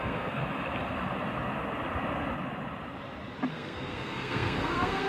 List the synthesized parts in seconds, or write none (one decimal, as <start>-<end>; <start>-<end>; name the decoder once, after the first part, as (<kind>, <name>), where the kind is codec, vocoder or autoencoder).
0.0-0.4 (codec, SNAC); 3.5-5.1